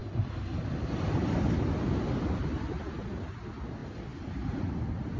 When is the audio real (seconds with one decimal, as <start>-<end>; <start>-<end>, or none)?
0.0-5.2